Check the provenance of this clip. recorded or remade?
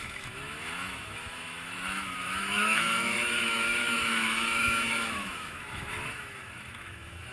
remade